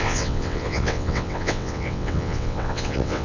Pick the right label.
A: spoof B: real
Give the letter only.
A